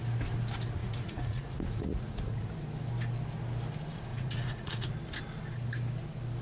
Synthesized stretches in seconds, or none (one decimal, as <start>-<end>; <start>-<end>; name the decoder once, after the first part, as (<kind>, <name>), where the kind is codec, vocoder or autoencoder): 0.8-2.5 (vocoder, Vocos); 4.1-4.9